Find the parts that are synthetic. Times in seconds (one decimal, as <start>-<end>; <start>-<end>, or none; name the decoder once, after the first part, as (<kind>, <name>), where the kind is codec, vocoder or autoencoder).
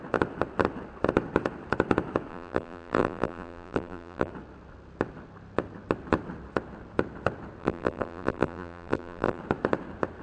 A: 2.3-4.3 (vocoder, BigVGAN v2); 7.6-9.4